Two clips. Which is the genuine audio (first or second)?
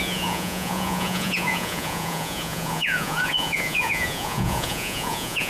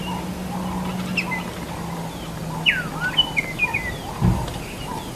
second